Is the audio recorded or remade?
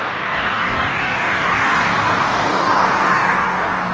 remade